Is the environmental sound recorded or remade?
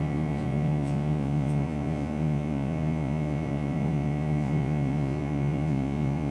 remade